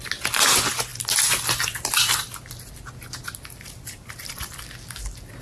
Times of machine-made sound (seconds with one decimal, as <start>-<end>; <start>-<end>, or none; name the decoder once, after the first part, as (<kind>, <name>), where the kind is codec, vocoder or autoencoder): 0.9-1.9 (vocoder, BigVGAN v2)